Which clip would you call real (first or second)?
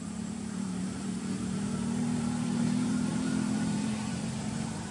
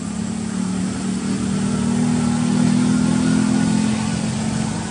second